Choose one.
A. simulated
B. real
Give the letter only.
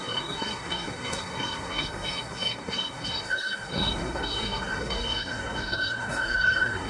A